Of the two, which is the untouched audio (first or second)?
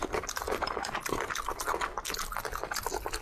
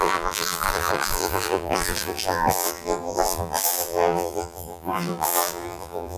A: first